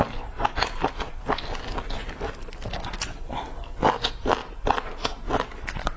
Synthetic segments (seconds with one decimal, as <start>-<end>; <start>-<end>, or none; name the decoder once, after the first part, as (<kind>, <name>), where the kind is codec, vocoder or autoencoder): none